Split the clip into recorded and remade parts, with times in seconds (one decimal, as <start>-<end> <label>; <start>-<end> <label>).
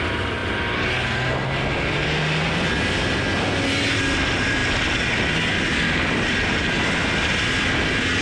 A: 0.0-8.2 recorded